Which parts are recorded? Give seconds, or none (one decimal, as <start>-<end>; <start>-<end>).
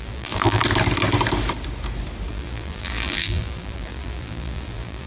0.6-2.3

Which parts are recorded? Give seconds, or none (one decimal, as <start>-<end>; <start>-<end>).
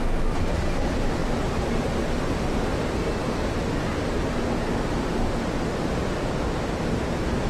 0.0-1.2; 2.4-7.5